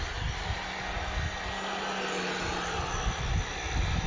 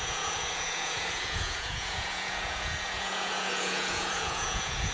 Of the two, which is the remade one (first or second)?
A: second